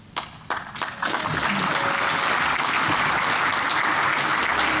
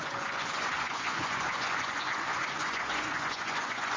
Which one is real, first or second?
first